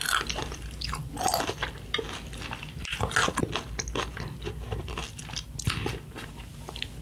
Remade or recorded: recorded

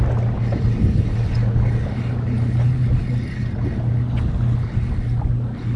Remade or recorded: recorded